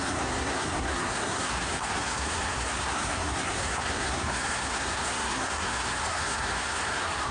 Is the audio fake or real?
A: fake